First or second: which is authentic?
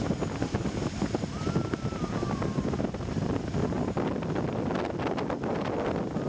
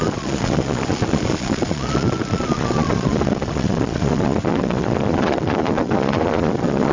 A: first